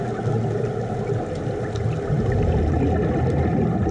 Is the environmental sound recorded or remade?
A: recorded